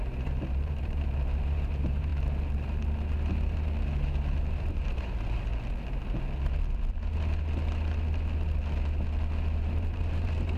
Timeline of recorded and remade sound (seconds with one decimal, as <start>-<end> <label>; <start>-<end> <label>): 0.0-2.1 remade; 2.1-4.6 recorded; 4.6-5.5 remade; 5.5-9.6 recorded; 9.6-10.6 remade